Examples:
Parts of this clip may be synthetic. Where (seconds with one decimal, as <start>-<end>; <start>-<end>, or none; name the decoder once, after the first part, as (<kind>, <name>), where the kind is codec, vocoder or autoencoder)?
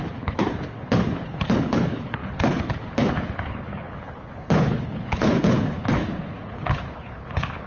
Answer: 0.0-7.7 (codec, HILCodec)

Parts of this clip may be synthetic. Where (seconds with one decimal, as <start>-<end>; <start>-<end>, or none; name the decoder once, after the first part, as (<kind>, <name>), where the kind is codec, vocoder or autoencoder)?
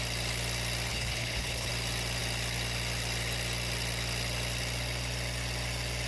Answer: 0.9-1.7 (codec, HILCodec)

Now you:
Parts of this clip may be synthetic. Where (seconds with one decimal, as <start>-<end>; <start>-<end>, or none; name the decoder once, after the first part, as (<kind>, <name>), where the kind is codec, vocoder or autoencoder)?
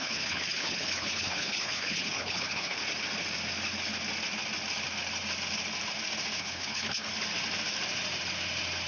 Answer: 0.0-2.8 (codec, HILCodec); 6.4-7.1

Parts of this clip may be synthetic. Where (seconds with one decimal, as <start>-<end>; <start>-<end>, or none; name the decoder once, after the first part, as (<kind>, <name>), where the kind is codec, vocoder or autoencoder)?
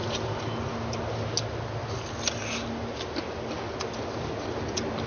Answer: none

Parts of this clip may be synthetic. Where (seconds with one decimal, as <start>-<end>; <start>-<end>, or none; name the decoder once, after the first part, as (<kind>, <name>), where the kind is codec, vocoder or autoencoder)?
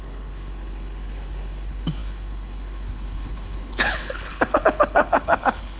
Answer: 0.0-5.8 (codec, HILCodec)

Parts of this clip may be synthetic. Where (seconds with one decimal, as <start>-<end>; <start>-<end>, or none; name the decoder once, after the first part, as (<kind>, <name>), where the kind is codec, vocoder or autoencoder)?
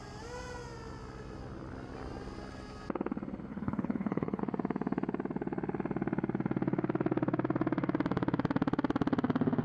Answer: 3.5-4.4 (codec, HILCodec)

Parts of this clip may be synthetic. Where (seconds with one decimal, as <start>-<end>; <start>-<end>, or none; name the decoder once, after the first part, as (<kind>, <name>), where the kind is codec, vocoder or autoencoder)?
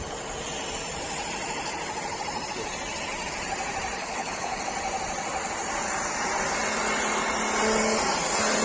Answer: 4.0-4.6 (codec, HILCodec)